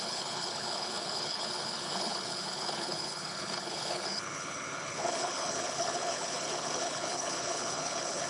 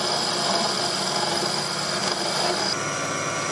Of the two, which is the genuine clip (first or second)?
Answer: second